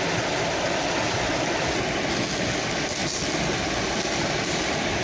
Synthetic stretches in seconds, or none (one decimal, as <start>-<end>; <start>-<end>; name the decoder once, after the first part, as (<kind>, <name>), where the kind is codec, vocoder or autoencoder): none